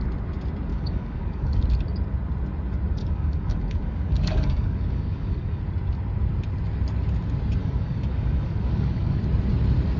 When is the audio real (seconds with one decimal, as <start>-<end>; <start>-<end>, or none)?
0.0-0.7; 1.6-3.0; 5.6-7.6; 9.2-10.0